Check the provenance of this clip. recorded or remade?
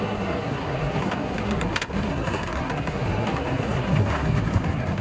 remade